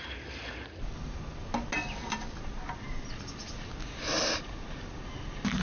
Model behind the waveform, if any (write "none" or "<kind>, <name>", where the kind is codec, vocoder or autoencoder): none